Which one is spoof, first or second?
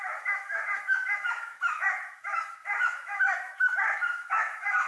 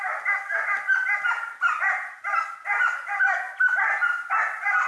first